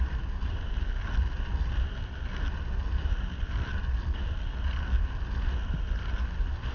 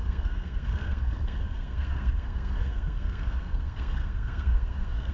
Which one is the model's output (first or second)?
second